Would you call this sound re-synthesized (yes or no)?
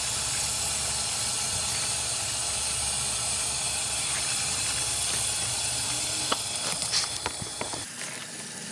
no